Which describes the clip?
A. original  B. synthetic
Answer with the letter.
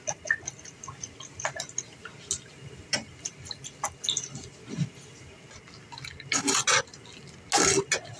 A